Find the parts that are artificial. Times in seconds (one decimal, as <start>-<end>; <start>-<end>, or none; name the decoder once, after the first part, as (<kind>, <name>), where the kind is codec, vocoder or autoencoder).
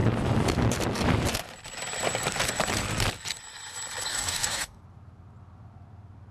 4.1-4.8 (codec, DAC)